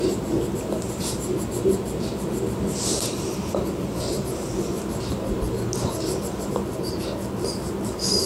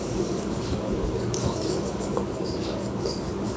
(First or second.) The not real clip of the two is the second